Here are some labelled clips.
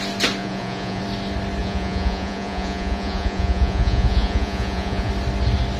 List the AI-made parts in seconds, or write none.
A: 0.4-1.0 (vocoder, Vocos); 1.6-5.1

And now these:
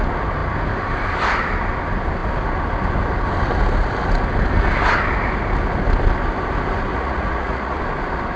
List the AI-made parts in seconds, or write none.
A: 6.9-7.8 (vocoder, Vocos)

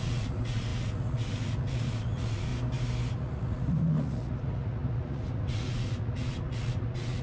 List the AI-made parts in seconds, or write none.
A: 0.0-2.5 (vocoder, Vocos); 3.1-7.2

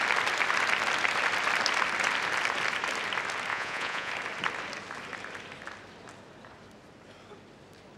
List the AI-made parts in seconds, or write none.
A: 3.5-4.1 (vocoder, Vocos)

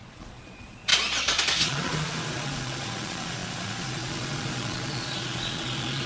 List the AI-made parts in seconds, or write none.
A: 0.0-0.9 (vocoder, Vocos); 1.6-6.1

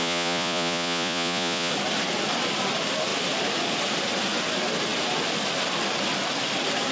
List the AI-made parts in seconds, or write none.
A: 0.0-1.7 (vocoder, Vocos)

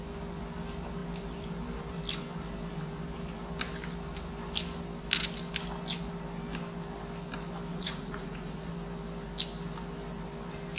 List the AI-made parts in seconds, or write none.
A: 7.7-8.7 (vocoder, Vocos)

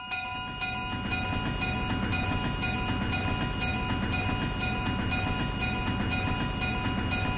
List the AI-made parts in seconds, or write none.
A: none